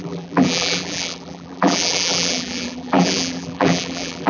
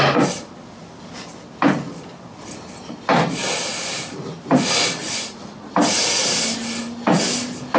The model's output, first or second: first